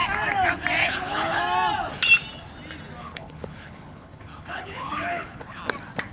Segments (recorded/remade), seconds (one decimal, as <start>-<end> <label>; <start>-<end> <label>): 0.0-0.8 recorded; 0.8-1.4 remade; 1.4-3.0 recorded; 3.0-5.6 remade; 5.6-6.1 recorded